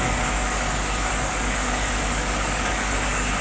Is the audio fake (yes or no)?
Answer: yes